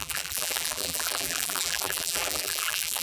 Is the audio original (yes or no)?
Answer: no